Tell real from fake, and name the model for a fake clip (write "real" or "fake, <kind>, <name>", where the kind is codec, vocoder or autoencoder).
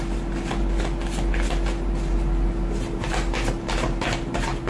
real